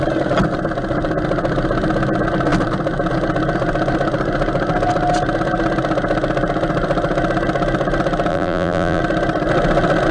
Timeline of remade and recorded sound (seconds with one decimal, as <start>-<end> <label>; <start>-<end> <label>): 0.0-8.3 recorded; 8.3-9.0 remade; 9.0-10.1 recorded